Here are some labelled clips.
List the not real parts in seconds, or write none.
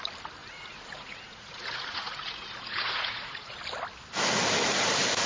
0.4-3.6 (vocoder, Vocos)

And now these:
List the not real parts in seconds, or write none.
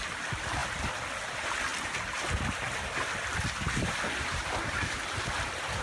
none